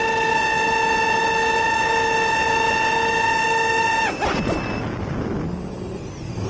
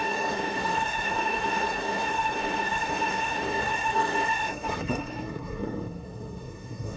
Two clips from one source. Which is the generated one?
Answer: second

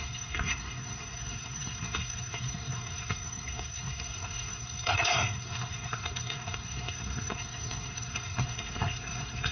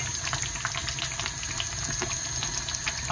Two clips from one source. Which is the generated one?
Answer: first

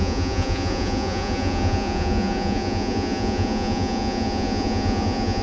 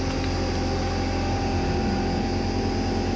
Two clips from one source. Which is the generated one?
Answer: first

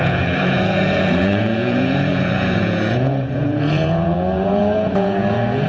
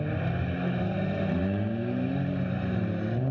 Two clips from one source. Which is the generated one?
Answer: first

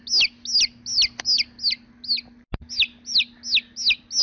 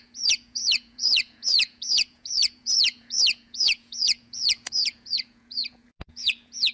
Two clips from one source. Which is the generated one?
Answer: second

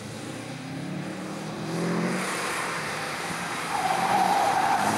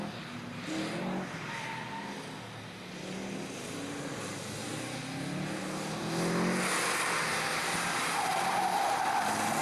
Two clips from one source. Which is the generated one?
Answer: first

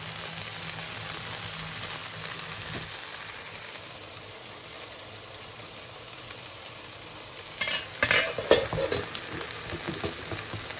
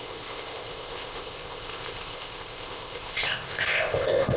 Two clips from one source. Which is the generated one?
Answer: second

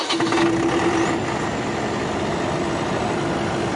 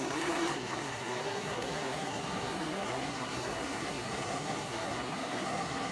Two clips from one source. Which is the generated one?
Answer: second